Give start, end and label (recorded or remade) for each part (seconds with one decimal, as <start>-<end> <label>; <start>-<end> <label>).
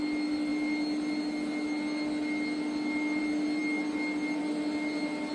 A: 0.0-5.3 recorded